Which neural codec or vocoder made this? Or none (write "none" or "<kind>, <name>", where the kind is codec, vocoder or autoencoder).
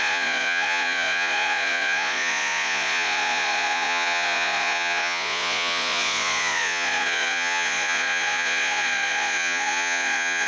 vocoder, Vocos